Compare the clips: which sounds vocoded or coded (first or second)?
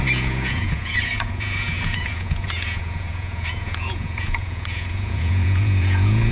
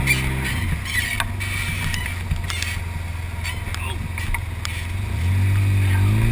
first